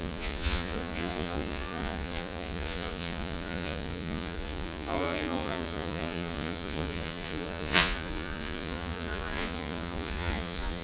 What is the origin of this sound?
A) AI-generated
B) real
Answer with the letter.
A